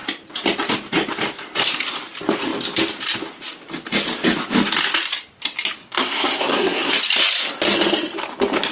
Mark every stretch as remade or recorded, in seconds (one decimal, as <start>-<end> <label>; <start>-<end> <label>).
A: 0.0-5.8 recorded; 5.8-6.9 remade; 6.9-8.7 recorded